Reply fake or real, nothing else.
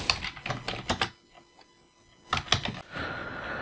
real